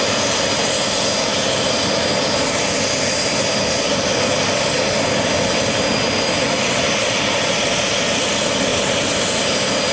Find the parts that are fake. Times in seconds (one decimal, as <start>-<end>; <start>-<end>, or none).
none